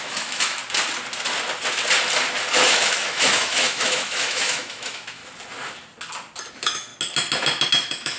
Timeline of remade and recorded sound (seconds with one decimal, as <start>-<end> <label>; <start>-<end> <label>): 0.0-0.6 remade; 0.6-2.5 recorded; 2.5-5.2 remade; 5.2-6.5 recorded; 6.5-6.9 remade; 6.9-7.7 recorded; 7.7-8.2 remade